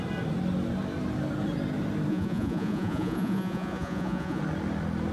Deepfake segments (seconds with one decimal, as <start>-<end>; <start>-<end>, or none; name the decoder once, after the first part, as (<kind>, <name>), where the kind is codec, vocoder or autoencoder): 2.1-4.4 (vocoder, Vocos)